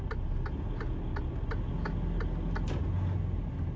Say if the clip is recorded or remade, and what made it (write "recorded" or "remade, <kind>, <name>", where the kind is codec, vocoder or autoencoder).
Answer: recorded